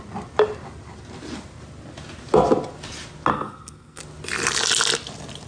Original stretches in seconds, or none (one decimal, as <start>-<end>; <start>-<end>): 0.0-3.3; 4.0-5.5